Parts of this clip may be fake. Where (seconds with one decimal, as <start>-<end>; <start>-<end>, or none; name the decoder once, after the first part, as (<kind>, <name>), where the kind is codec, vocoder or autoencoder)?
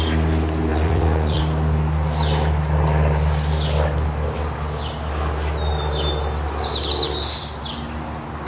0.7-1.4 (vocoder, Vocos)